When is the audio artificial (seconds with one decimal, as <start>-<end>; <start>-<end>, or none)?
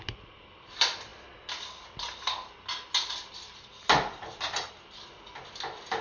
none